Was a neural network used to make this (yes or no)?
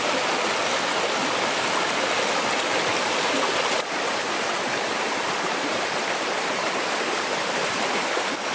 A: no